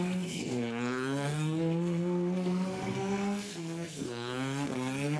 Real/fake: fake